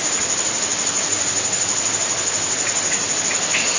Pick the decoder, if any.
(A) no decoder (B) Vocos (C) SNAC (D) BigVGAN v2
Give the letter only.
A